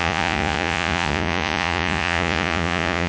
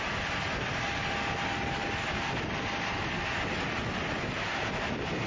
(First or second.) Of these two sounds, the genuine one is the second